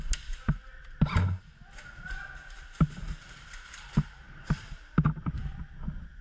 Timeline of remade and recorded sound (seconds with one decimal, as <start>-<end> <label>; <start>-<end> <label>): 0.0-3.2 recorded; 3.2-5.4 remade; 5.4-6.2 recorded